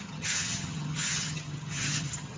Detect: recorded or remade remade